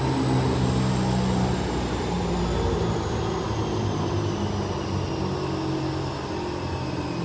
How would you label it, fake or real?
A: real